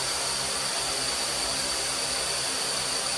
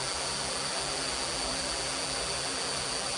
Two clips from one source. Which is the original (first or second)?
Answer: first